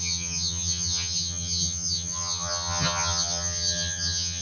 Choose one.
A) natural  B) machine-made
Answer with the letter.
B